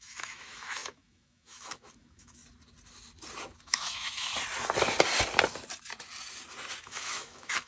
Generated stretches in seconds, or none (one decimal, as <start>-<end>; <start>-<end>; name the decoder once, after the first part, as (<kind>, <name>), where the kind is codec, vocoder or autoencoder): 0.0-2.4 (autoencoder, DAC-VAE); 3.6-4.3; 6.8-7.7